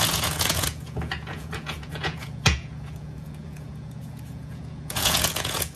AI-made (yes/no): yes